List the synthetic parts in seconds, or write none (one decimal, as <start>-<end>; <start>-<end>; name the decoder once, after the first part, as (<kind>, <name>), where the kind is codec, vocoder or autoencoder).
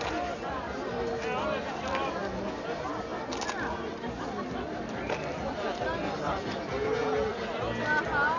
none